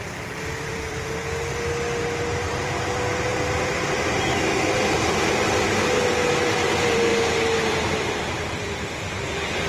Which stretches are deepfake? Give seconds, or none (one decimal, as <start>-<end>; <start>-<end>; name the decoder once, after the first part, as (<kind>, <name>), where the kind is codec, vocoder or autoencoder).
0.0-1.2 (vocoder, BigVGAN v2); 2.0-3.3; 6.5-7.1; 7.7-9.7